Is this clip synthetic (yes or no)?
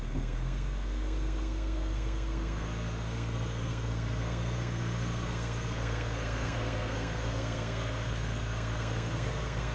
yes